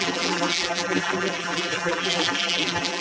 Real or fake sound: fake